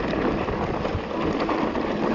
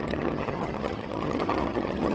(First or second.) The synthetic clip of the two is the second